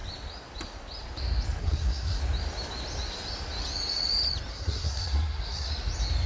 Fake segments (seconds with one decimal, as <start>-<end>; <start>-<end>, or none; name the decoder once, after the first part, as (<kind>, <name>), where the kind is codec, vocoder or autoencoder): 1.6-2.2 (codec, SNAC); 4.5-5.7